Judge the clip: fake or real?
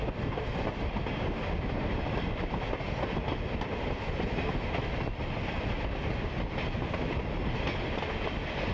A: real